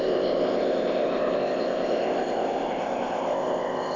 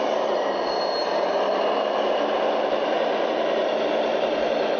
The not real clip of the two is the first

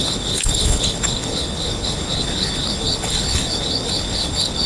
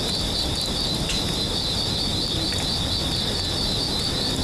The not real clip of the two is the first